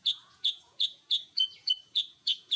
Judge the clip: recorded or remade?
remade